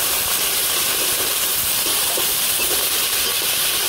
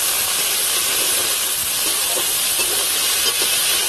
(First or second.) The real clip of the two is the second